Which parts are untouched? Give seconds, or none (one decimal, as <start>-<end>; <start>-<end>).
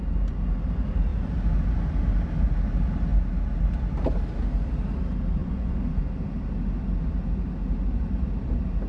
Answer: 0.0-5.4; 6.0-8.9